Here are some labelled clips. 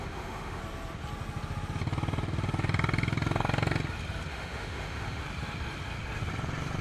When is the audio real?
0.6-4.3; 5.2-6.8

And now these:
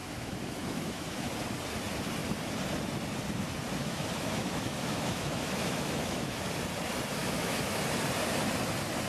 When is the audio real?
1.3-3.8; 6.4-7.2; 7.8-9.1

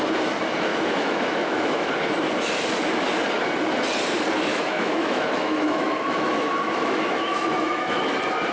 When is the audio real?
0.0-0.7; 1.9-4.5; 8.0-8.5

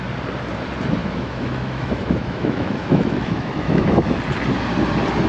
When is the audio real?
0.0-1.0; 4.2-5.3

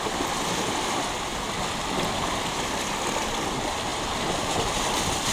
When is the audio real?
0.0-5.3